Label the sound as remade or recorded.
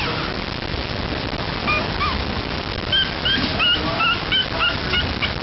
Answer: recorded